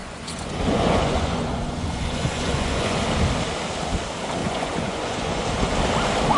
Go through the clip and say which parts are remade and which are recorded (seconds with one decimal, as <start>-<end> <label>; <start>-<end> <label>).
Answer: 0.0-3.0 remade; 3.0-4.4 recorded; 4.4-5.4 remade; 5.4-6.4 recorded